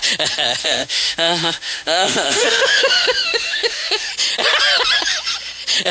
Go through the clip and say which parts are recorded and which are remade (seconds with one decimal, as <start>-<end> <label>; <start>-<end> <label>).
0.0-0.6 recorded; 0.6-4.1 remade; 4.1-5.9 recorded